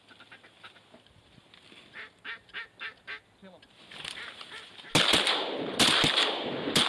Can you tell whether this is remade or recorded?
recorded